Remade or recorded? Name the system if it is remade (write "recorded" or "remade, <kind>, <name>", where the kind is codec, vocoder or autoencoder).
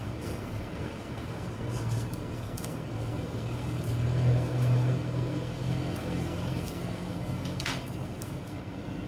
remade, codec, SNAC